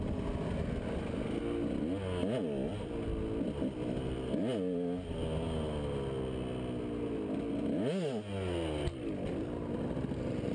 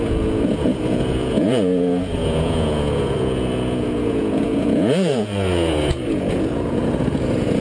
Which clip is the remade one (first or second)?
second